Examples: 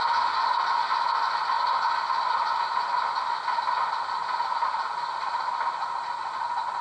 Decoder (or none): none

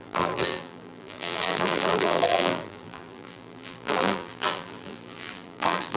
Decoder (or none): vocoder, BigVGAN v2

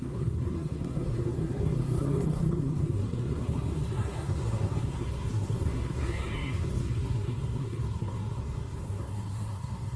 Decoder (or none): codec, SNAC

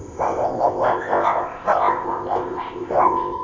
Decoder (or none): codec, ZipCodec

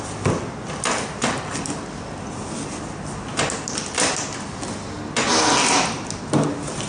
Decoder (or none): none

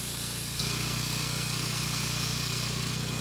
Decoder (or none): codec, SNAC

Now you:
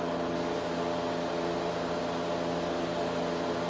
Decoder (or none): none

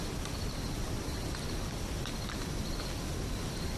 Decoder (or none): none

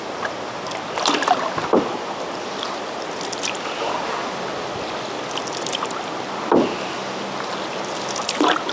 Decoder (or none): none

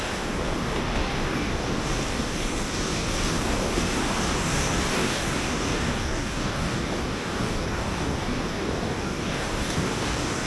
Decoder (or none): codec, DAC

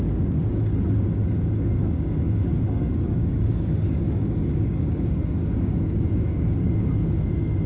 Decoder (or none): codec, DAC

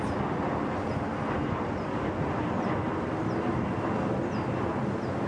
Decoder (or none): none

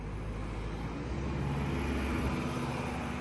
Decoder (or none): none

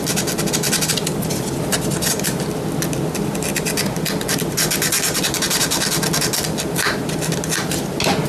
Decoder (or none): none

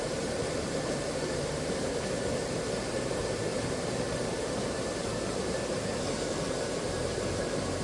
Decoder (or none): vocoder, BigVGAN v2